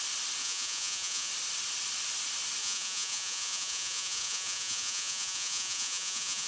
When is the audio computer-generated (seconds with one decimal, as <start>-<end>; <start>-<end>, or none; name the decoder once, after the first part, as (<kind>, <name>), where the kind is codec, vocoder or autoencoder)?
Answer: 0.4-1.3 (vocoder, Vocos); 2.6-6.5